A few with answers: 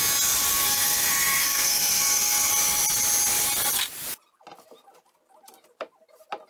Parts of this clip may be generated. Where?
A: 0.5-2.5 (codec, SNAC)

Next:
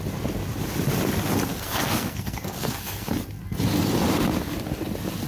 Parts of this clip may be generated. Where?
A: 1.5-3.1 (codec, SNAC)

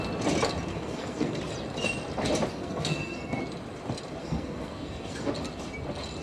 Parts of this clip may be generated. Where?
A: 0.7-1.4 (codec, SNAC); 2.5-3.4; 4.2-5.3

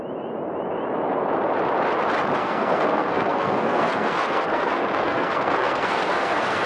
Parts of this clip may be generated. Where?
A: 2.4-6.7 (codec, SNAC)

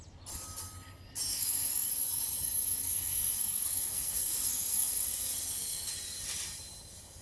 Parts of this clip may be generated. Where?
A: 1.3-1.9 (codec, SNAC); 2.6-5.9

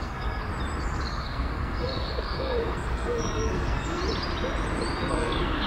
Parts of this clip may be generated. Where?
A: 0.0-0.5 (codec, SNAC); 1.1-4.0; 5.1-5.7